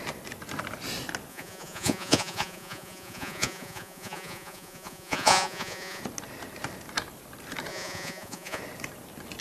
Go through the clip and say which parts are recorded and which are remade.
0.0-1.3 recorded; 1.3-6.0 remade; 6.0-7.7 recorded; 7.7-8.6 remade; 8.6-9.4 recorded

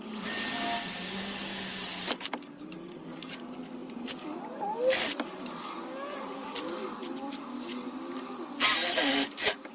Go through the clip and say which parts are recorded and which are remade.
0.0-9.7 recorded

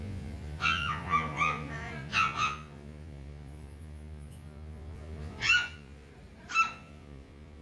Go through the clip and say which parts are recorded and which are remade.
0.0-6.1 remade; 6.1-6.7 recorded; 6.7-7.6 remade

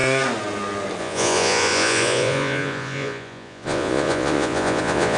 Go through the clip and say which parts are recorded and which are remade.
0.0-1.0 recorded; 1.0-5.2 remade

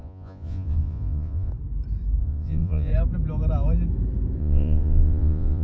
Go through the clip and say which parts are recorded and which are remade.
0.0-1.5 remade; 1.5-2.2 recorded; 2.2-2.9 remade; 2.9-4.4 recorded; 4.4-5.6 remade

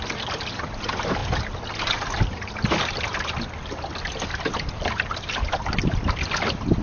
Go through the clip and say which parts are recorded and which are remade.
0.0-6.8 recorded